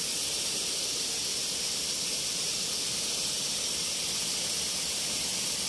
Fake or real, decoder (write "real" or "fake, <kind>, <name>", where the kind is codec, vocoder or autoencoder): real